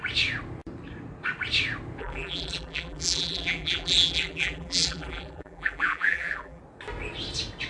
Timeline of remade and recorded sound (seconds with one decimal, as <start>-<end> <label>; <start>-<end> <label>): 0.0-2.0 recorded; 2.0-6.6 remade; 6.6-7.7 recorded